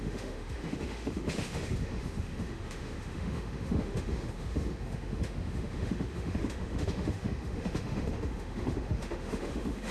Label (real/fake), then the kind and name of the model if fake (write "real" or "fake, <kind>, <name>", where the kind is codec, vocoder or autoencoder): fake, autoencoder, DAC-VAE